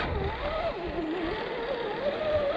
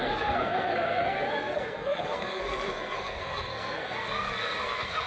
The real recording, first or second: first